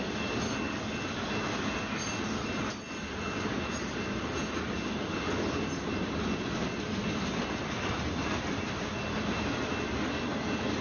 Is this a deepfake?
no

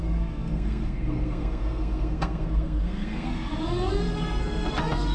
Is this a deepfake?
yes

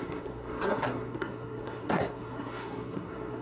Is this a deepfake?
yes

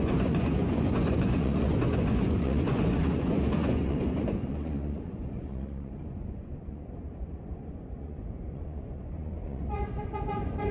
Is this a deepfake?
yes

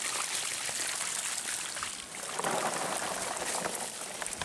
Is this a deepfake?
yes